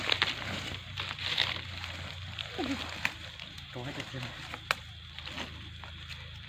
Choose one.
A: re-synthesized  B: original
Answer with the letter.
B